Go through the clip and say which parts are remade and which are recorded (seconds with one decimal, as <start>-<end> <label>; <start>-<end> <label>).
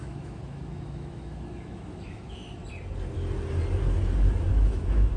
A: 0.0-2.6 remade; 2.6-4.5 recorded; 4.5-5.2 remade